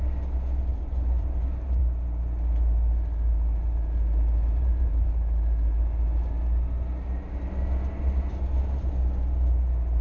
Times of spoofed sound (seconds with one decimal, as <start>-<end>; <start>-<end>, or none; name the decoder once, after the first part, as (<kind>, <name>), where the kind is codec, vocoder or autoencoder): 0.7-1.8 (vocoder, BigVGAN v2); 4.4-5.1